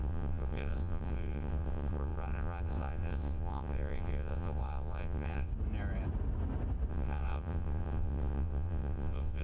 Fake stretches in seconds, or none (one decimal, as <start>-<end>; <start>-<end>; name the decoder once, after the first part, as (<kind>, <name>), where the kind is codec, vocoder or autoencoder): 0.0-5.5 (vocoder, WaveNeXt); 6.9-9.4